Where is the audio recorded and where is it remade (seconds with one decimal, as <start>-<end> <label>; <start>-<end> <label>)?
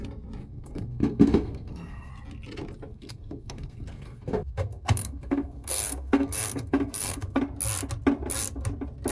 0.0-0.4 recorded; 0.4-2.1 remade; 2.1-2.9 recorded; 2.9-7.4 remade; 7.4-9.1 recorded